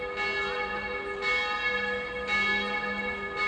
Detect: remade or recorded recorded